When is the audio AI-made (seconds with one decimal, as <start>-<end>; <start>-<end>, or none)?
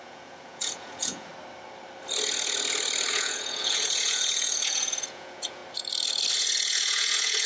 0.0-1.3; 3.1-5.6; 6.3-7.5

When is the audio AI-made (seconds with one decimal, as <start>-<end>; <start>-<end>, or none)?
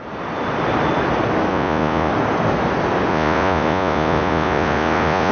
1.5-2.1; 3.1-5.3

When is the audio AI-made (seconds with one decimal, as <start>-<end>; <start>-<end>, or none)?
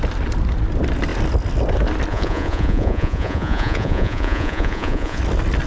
2.1-5.2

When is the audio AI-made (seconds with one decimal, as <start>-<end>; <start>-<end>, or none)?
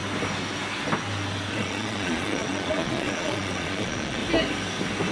1.5-4.2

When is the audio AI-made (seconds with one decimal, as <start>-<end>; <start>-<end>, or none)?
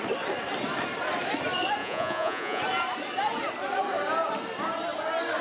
1.8-2.6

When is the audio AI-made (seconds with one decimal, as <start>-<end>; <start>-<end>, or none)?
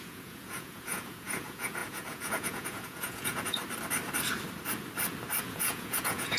0.0-3.6; 5.4-6.4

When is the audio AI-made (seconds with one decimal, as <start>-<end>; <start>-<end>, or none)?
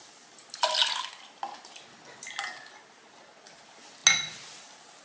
none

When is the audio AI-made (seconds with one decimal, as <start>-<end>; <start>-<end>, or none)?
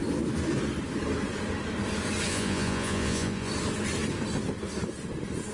2.3-3.5